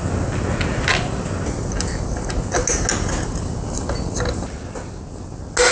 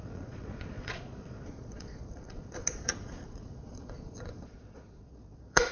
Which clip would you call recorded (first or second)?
first